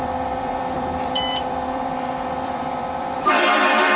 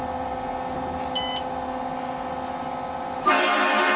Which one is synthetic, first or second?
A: first